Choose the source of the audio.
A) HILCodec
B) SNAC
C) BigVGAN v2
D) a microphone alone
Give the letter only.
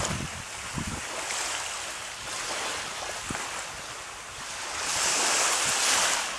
D